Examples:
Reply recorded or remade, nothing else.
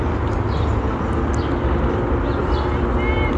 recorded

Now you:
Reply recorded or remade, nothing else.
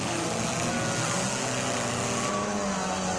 recorded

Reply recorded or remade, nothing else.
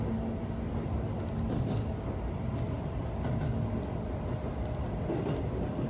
recorded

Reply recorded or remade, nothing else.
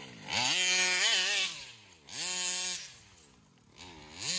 recorded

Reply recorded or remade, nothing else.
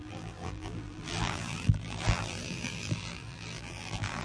remade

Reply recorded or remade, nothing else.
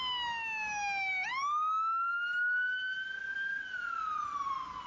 recorded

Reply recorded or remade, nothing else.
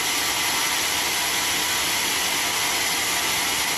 recorded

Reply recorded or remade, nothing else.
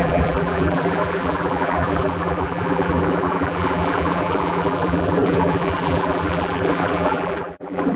remade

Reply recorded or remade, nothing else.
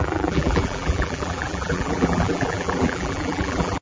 remade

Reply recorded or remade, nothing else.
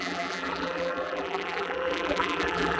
remade